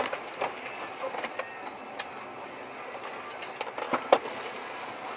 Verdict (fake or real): real